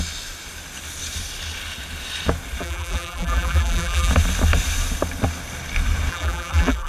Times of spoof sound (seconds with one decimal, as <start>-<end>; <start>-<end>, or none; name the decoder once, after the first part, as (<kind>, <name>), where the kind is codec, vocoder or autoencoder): 2.6-4.1 (vocoder, BigVGAN v2); 6.1-6.9